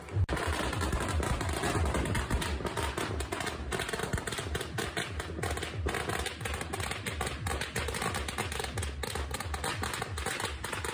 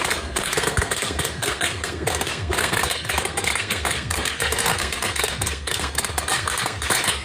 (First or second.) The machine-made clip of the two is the second